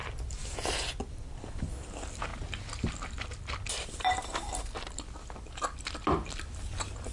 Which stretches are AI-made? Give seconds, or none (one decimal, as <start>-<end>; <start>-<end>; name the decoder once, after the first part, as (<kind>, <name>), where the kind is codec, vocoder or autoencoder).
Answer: 0.0-2.3 (vocoder, BigVGAN v2); 3.3-7.1